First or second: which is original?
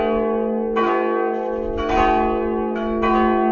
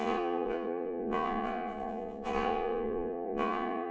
first